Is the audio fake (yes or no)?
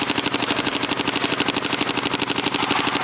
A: no